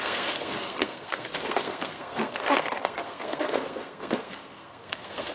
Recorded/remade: remade